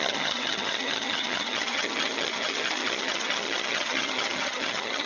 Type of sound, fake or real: fake